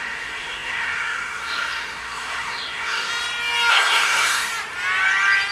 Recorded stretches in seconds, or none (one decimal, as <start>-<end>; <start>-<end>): 3.1-3.7; 4.5-5.5